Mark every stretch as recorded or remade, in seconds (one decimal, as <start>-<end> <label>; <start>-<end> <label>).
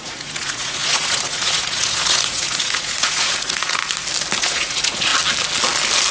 0.0-3.8 remade; 3.8-4.4 recorded; 4.4-5.1 remade; 5.1-6.1 recorded